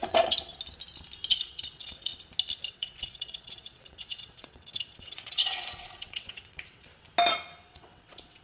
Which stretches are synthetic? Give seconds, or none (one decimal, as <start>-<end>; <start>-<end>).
0.0-0.5; 1.3-2.1; 2.7-6.9; 7.7-8.4